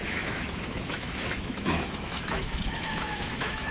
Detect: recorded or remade remade